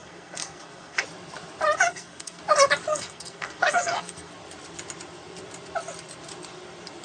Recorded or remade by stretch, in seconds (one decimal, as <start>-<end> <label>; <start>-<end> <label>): 0.0-1.0 remade; 1.0-1.9 recorded; 1.9-2.4 remade; 2.4-2.9 recorded; 2.9-4.3 remade; 4.3-7.0 recorded